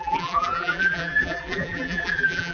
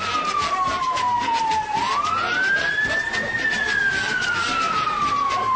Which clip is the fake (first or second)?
first